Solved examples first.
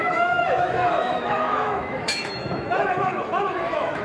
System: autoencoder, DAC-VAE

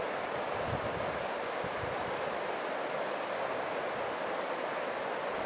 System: none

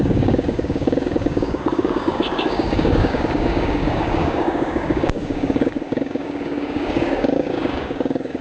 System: codec, DAC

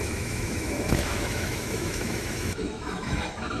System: autoencoder, DAC-VAE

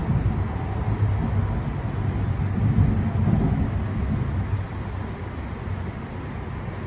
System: none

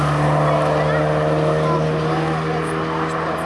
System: none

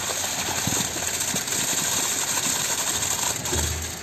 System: none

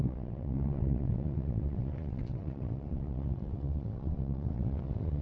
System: vocoder, WaveNeXt